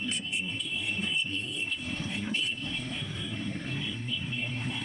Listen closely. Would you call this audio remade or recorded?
remade